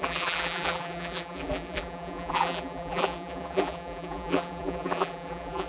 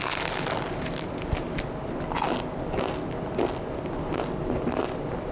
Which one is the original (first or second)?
second